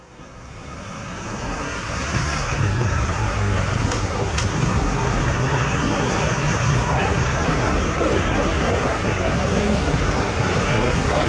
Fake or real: fake